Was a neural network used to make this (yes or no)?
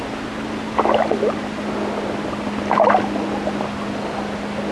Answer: no